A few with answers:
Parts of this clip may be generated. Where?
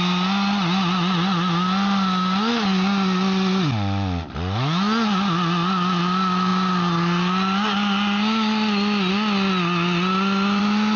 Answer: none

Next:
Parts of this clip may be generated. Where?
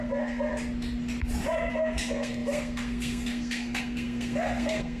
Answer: 0.0-0.5 (codec, SNAC); 1.7-5.0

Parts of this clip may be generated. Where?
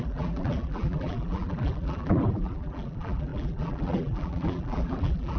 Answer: 0.0-5.4 (vocoder, BigVGAN v2)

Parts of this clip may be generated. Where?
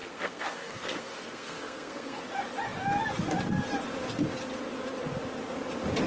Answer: 0.0-2.2 (codec, SNAC)